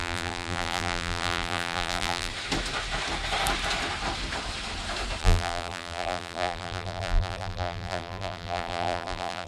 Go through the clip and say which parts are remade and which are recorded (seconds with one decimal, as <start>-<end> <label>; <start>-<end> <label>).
0.0-2.3 remade; 2.3-5.2 recorded; 5.2-9.5 remade